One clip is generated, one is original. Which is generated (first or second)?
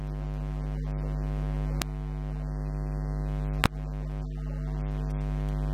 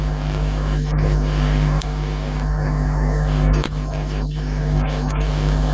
second